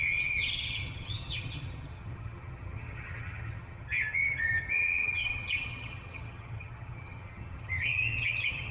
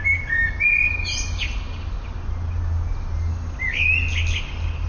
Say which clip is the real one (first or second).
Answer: second